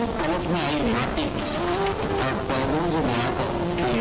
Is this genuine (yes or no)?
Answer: yes